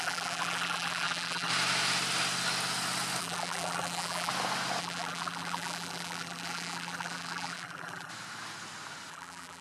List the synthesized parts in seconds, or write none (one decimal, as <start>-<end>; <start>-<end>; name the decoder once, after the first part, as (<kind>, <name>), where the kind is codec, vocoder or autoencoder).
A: 0.0-1.5 (vocoder, BigVGAN v2); 3.2-4.3; 4.8-8.1; 9.1-9.6